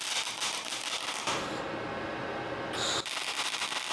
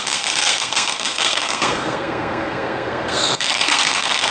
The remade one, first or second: second